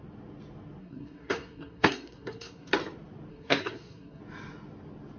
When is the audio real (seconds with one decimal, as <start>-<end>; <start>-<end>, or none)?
0.0-0.8; 2.7-3.3; 4.2-5.2